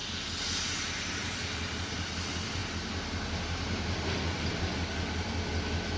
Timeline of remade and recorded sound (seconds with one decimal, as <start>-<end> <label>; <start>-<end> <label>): 0.0-6.0 recorded